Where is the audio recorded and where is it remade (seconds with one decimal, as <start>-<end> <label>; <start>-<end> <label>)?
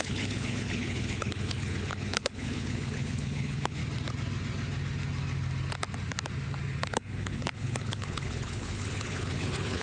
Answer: 0.0-3.8 remade; 3.8-6.8 recorded; 6.8-9.8 remade